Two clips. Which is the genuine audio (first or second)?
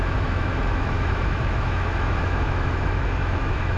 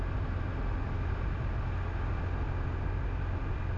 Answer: second